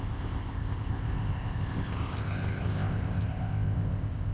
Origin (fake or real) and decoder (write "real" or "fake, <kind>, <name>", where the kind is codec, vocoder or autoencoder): fake, codec, ZipCodec